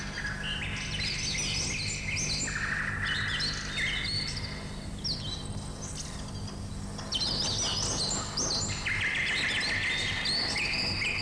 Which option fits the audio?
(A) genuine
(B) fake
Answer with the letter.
A